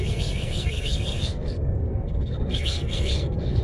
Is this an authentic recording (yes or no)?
no